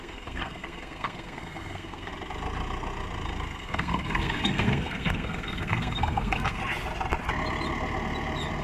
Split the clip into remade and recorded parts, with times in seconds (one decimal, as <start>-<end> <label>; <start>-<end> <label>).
0.0-2.1 remade; 2.1-3.6 recorded; 3.6-6.6 remade; 6.6-8.6 recorded